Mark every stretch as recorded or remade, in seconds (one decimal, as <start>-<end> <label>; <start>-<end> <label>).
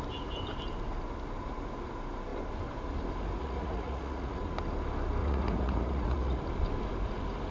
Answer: 0.0-3.4 recorded; 3.4-4.4 remade; 4.4-5.2 recorded; 5.2-6.4 remade; 6.4-7.5 recorded